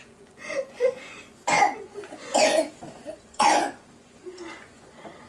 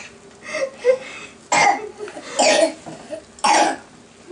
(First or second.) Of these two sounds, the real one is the second